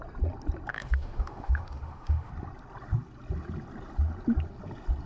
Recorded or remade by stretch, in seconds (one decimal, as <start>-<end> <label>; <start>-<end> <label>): 0.0-0.7 recorded; 0.7-2.3 remade; 2.3-5.1 recorded